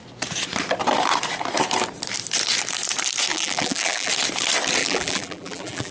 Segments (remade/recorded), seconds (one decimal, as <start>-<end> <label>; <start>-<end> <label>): 0.0-3.3 recorded; 3.3-4.1 remade; 4.1-4.8 recorded; 4.8-5.9 remade